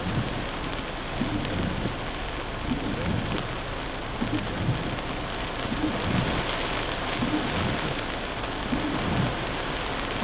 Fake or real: real